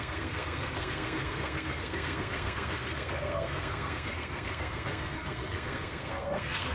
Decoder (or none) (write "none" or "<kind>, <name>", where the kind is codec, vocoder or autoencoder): codec, SNAC